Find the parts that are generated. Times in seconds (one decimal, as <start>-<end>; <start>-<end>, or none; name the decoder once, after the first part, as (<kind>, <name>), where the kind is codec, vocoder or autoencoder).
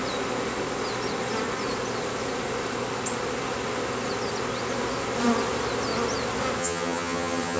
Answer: 6.6-7.6 (vocoder, HiFi-GAN)